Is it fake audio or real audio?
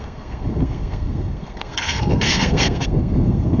fake